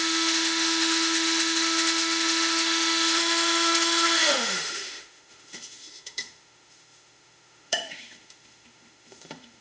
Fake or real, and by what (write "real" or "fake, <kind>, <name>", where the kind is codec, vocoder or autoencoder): fake, autoencoder, DAC-VAE